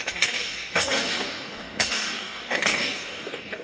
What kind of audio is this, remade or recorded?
remade